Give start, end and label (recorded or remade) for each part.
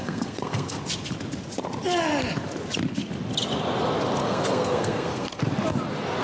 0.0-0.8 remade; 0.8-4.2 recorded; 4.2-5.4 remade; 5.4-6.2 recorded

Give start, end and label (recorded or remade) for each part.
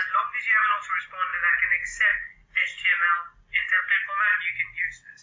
0.0-5.2 recorded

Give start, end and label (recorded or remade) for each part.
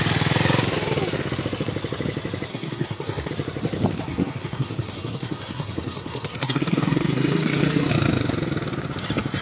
0.0-2.5 recorded; 2.5-3.3 remade; 3.3-4.1 recorded; 4.1-7.9 remade; 7.9-9.4 recorded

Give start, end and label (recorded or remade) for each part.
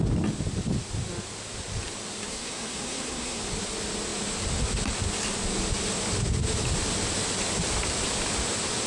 0.0-2.3 recorded; 2.3-3.4 remade; 3.4-8.9 recorded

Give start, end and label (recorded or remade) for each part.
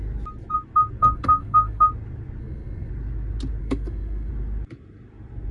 0.0-1.0 recorded; 1.0-1.9 remade; 1.9-2.4 recorded; 2.4-2.9 remade; 2.9-3.6 recorded; 3.6-4.3 remade; 4.3-5.5 recorded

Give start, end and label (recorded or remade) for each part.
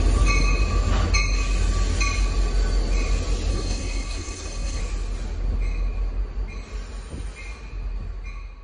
0.0-3.5 recorded; 3.5-4.8 remade; 4.8-8.6 recorded